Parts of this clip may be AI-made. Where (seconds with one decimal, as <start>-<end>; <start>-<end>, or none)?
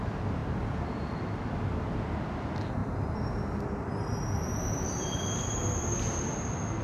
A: none